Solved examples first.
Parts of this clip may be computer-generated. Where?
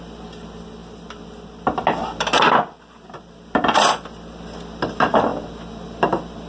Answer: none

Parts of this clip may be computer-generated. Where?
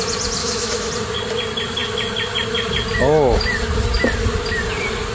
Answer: 0.4-0.9 (autoencoder, DAC-VAE)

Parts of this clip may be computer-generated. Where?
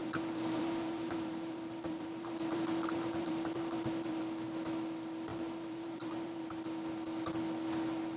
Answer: 0.0-4.2 (vocoder, BigVGAN v2); 5.3-6.4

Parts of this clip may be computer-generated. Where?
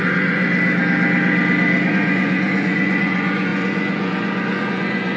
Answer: 0.0-0.4 (vocoder, Vocos); 1.9-5.2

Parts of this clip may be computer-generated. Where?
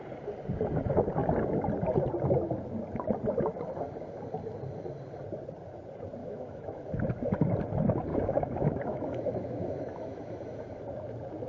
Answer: 6.2-6.9 (autoencoder, DAC-VAE); 8.1-10.7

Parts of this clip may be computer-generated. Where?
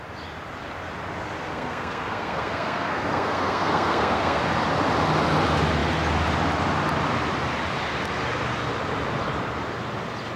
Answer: 1.5-4.4 (codec, SNAC)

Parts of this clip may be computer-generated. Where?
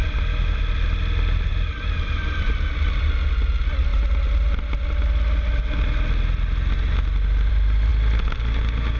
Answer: none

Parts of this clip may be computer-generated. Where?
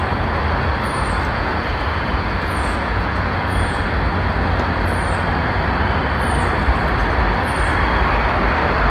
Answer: 1.3-3.8 (vocoder, Vocos)